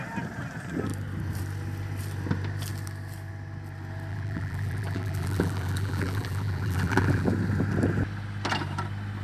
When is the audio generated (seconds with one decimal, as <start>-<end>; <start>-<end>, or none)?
4.1-7.3